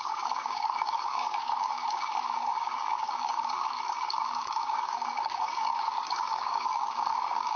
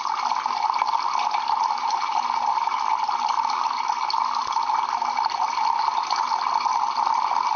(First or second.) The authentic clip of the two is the second